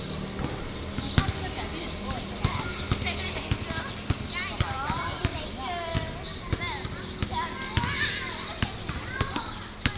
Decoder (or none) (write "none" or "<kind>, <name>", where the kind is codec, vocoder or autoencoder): none